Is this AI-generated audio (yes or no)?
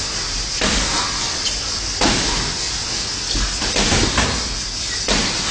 no